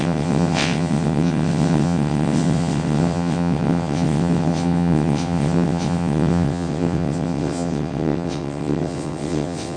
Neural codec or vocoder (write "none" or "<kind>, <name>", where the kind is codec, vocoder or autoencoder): vocoder, WaveNeXt